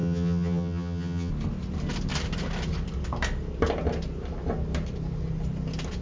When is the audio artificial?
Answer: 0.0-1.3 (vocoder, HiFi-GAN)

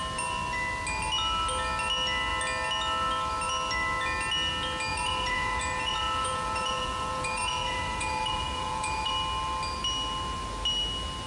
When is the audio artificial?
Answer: 4.9-9.1 (vocoder, Vocos)

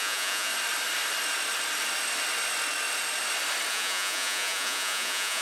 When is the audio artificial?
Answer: 0.0-0.5 (vocoder, Vocos); 3.7-5.4

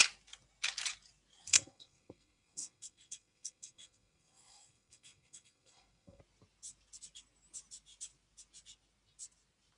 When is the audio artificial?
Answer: 1.5-6.2 (codec, SNAC)

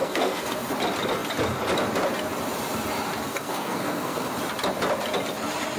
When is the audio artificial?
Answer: 0.0-0.7 (codec, SNAC); 3.3-4.3

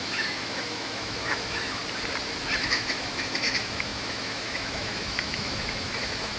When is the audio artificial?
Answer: 0.0-1.8 (autoencoder, DAC-VAE); 2.6-6.4

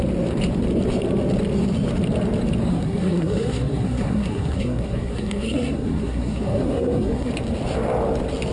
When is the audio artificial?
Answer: 2.7-7.3 (codec, SNAC)

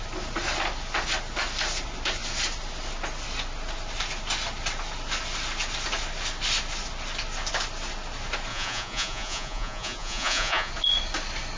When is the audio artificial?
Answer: 8.5-10.7 (vocoder, Vocos)